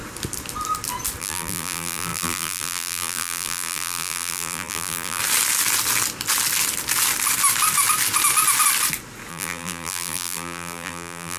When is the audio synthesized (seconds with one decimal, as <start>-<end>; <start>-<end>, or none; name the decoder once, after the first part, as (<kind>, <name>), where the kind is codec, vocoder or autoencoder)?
1.2-5.2 (vocoder, BigVGAN v2); 9.3-11.4